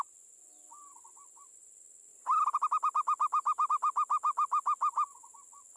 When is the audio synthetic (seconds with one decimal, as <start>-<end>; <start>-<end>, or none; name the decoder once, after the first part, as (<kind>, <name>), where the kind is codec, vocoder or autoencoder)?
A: none